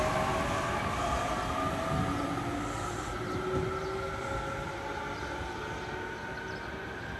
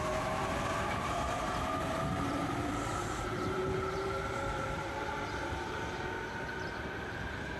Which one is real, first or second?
first